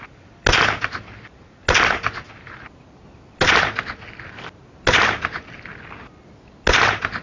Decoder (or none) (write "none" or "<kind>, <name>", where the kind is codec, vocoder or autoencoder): none